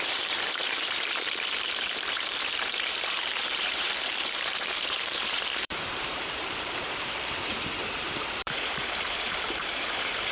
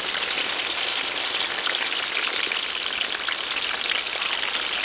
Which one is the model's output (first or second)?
first